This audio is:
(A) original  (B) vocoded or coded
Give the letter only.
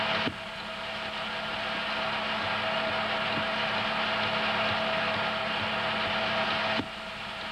A